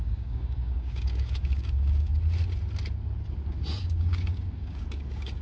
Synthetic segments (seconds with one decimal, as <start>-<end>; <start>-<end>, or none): 0.0-2.1; 3.8-5.4